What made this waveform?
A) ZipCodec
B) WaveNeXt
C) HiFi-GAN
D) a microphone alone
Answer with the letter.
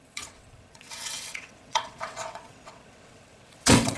B